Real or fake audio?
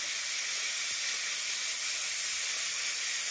real